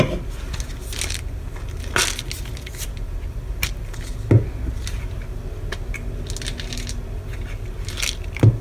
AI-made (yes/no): no